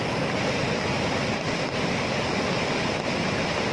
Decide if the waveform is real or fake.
real